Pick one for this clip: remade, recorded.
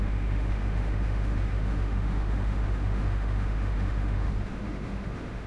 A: remade